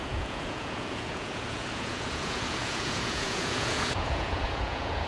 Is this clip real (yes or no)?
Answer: no